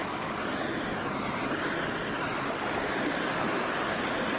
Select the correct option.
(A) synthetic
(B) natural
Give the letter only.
B